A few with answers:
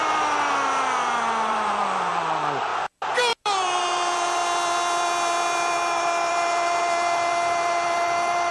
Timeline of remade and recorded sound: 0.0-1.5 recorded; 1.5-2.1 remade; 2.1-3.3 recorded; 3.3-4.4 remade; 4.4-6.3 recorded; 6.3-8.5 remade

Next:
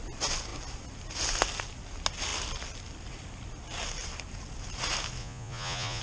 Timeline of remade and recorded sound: 0.0-5.2 recorded; 5.2-6.0 remade

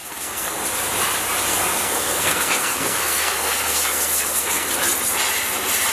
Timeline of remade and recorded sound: 0.0-0.6 remade; 0.6-1.5 recorded; 1.5-4.7 remade; 4.7-5.9 recorded

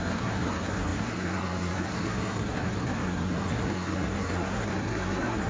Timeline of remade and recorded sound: 0.0-5.5 remade

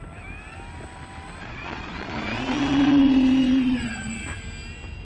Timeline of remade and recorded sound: 0.0-1.4 recorded; 1.4-4.4 remade; 4.4-5.0 recorded

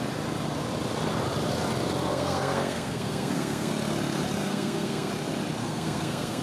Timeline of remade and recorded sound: 0.0-2.1 recorded; 2.1-3.7 remade; 3.7-4.4 recorded; 4.4-5.1 remade; 5.1-5.6 recorded; 5.6-6.4 remade